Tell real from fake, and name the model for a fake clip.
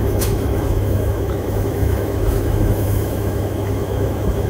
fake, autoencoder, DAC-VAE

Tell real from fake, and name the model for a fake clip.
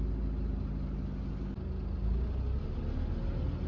real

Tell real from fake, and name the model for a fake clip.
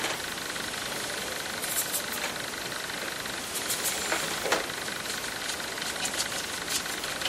real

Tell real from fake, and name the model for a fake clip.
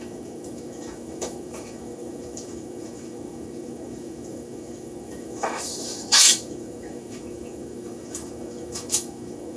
fake, autoencoder, DAC-VAE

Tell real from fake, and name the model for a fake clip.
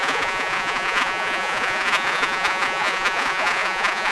fake, vocoder, Vocos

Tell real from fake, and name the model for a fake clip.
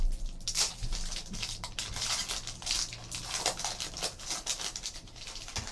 real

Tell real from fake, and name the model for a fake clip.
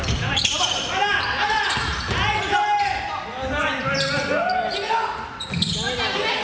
real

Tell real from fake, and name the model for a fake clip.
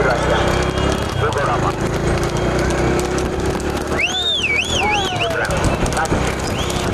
real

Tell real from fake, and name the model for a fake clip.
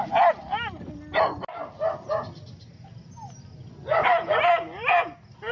real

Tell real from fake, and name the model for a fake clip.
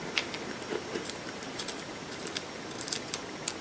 real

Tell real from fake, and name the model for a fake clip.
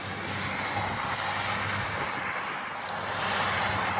real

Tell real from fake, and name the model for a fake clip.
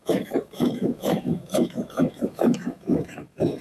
fake, autoencoder, DAC-VAE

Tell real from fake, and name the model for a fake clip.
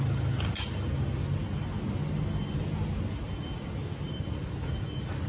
real